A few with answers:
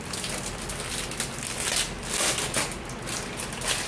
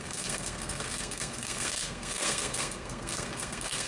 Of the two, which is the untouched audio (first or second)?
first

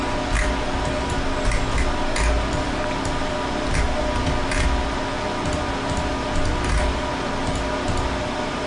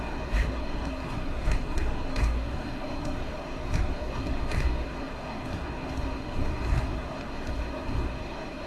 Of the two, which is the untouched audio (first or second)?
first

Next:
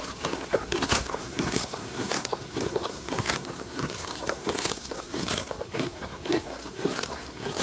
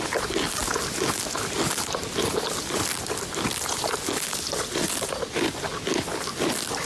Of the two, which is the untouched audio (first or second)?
second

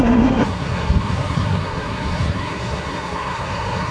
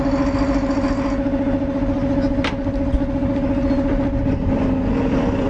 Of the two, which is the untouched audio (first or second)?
second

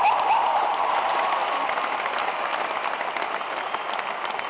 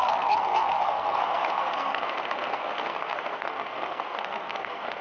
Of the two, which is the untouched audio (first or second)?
first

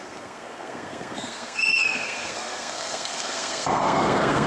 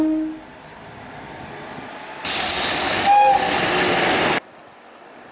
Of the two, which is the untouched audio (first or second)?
second